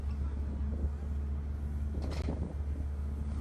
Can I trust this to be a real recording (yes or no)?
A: yes